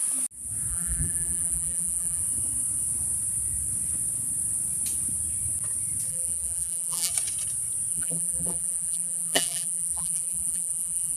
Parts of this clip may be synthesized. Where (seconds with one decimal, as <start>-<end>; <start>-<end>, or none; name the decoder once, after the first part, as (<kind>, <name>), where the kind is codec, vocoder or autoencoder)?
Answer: 0.7-2.2 (vocoder, BigVGAN v2); 6.1-7.1; 7.9-11.2